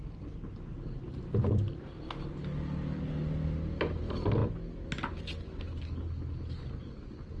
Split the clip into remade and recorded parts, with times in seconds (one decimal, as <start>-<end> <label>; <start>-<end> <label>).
0.0-0.7 recorded; 0.7-2.3 remade; 2.3-7.4 recorded